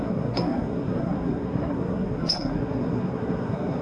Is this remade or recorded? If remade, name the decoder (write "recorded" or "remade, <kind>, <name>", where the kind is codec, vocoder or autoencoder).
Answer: remade, codec, SNAC